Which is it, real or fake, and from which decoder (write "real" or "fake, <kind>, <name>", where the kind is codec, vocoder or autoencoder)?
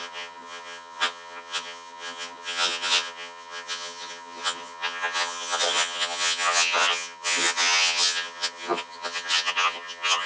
fake, vocoder, HiFi-GAN